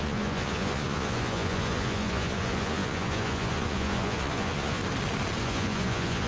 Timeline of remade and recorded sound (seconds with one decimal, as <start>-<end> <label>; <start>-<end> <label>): 0.0-4.8 remade; 4.8-5.4 recorded; 5.4-6.3 remade